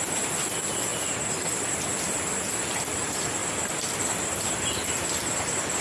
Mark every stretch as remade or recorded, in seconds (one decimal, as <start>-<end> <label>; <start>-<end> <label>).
0.0-5.8 recorded